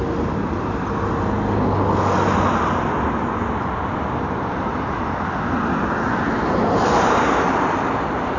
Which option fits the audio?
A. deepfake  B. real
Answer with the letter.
B